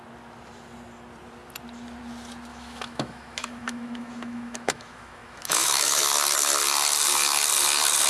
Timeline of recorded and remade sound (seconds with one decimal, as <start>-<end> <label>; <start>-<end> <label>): 0.0-2.5 recorded; 2.5-6.0 remade; 6.0-8.1 recorded